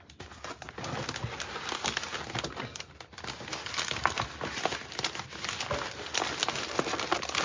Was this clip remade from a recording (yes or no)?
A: no